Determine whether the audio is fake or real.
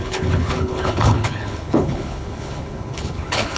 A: fake